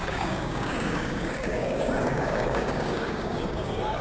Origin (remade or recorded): remade